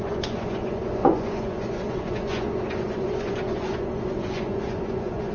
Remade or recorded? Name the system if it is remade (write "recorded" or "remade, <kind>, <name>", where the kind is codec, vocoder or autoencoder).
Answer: remade, vocoder, Vocos